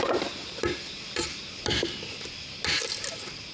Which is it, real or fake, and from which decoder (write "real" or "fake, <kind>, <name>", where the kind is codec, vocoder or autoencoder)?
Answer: real